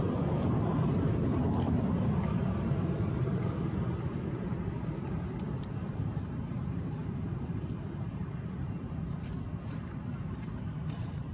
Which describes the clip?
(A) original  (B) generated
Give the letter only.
B